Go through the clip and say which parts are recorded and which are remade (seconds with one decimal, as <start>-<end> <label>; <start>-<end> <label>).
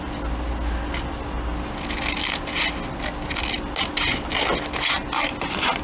0.0-5.8 recorded